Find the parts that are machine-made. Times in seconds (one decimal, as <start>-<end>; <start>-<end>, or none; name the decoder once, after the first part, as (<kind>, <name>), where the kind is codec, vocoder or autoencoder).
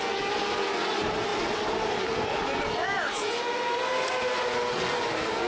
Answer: none